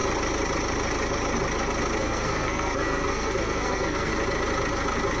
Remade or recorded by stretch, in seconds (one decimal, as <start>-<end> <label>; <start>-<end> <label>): 0.0-2.0 recorded; 2.0-4.1 remade; 4.1-5.2 recorded